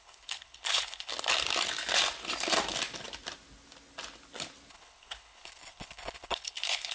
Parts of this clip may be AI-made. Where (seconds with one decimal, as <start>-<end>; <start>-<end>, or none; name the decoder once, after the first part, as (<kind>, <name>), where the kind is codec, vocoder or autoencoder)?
0.0-1.1 (codec, HILCodec); 4.7-6.9